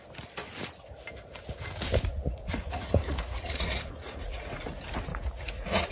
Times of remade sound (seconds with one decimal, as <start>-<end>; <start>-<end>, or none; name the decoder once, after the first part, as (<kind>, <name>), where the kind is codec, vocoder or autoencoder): 2.1-4.4 (vocoder, Vocos); 5.1-5.9